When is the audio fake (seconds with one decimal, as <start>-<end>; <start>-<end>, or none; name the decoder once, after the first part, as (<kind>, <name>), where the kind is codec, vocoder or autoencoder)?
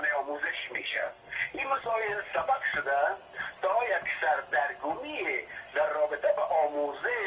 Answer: 0.6-1.8 (codec, SNAC)